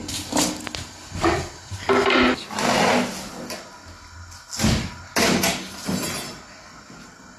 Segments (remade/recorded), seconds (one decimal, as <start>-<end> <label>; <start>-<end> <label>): 0.0-7.4 recorded